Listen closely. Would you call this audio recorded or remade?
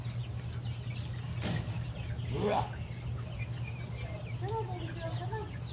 recorded